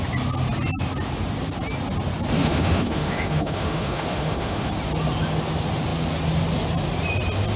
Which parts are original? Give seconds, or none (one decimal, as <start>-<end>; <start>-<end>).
0.0-2.4; 4.7-7.6